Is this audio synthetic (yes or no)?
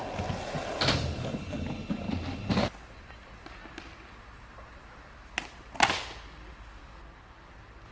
no